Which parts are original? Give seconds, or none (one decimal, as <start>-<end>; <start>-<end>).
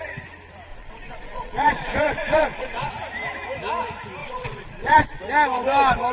0.0-0.7; 2.9-4.2; 5.2-6.1